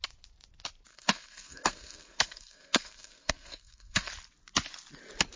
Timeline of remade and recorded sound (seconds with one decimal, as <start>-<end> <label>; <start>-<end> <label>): 0.0-0.9 recorded; 0.9-4.1 remade; 4.1-5.4 recorded